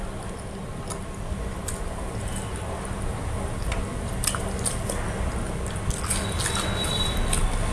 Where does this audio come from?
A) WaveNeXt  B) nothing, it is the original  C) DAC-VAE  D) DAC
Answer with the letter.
B